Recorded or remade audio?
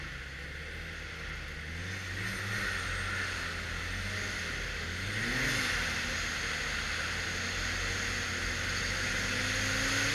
recorded